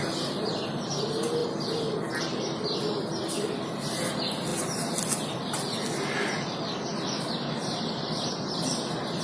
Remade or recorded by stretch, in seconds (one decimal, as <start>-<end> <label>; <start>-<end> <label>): 0.0-9.2 recorded